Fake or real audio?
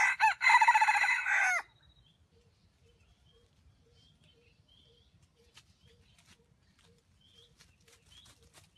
real